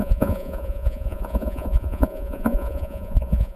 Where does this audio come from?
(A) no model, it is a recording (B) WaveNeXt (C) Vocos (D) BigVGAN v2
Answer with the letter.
C